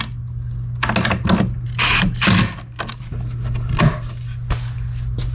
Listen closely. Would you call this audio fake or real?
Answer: real